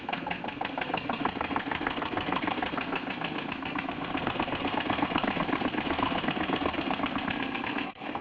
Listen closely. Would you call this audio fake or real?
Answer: fake